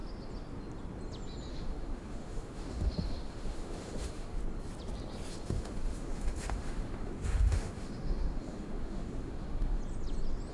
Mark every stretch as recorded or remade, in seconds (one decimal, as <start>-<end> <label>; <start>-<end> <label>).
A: 0.0-1.5 recorded; 1.5-4.4 remade; 4.4-5.3 recorded; 5.3-9.8 remade; 9.8-10.5 recorded